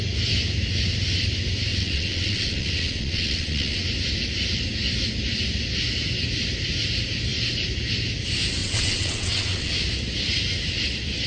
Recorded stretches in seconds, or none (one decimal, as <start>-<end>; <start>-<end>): 0.0-1.7; 3.8-8.6; 9.7-11.3